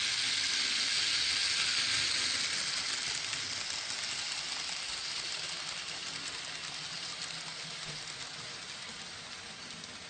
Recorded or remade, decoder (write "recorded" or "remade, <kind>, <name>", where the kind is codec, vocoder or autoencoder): recorded